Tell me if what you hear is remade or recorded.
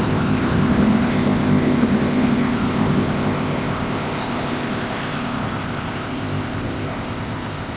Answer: remade